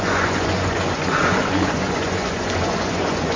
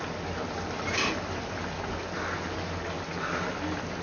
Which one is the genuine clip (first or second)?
second